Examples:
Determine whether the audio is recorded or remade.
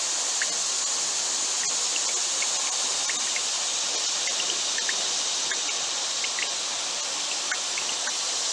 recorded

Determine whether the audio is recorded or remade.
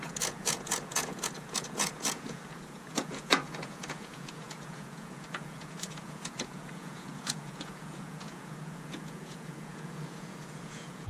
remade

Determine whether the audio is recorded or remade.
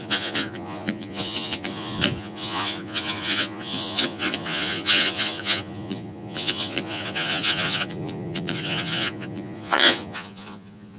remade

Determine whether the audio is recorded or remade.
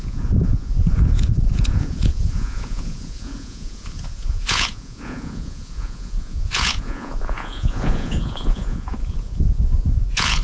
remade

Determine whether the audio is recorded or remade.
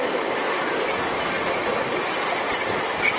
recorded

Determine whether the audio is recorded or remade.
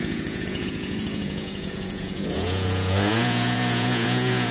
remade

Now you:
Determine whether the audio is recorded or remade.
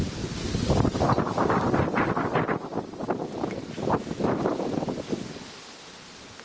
recorded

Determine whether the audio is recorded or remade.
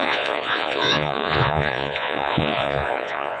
remade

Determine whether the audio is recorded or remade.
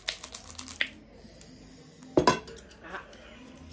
recorded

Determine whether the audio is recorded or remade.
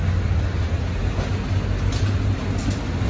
recorded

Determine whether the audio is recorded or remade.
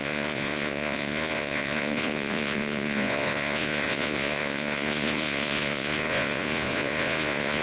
remade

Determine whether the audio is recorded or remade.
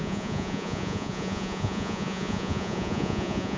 remade